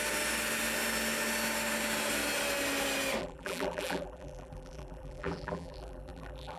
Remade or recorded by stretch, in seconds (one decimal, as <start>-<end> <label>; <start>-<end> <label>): 0.0-3.2 recorded; 3.2-6.6 remade

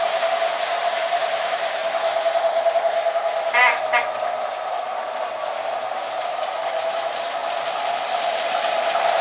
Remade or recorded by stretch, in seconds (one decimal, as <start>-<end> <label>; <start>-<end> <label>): 0.0-1.8 remade; 1.8-5.8 recorded; 5.8-7.4 remade; 7.4-8.0 recorded; 8.0-9.2 remade

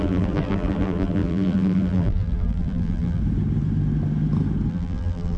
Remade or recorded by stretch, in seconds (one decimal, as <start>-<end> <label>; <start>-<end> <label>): 0.0-3.2 remade; 3.2-4.7 recorded; 4.7-5.4 remade

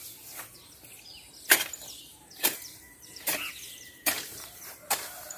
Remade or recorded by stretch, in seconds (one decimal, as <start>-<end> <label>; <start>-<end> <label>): 0.0-2.1 recorded; 2.1-5.4 remade

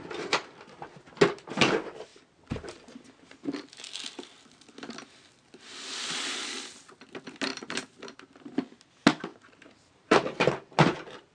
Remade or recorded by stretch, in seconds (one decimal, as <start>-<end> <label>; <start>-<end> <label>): 0.0-7.5 recorded; 7.5-8.3 remade; 8.3-9.3 recorded; 9.3-10.5 remade; 10.5-11.3 recorded

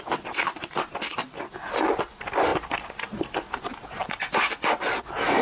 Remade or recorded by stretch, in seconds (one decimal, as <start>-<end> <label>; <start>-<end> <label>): 0.0-2.5 recorded; 2.5-4.2 remade; 4.2-5.4 recorded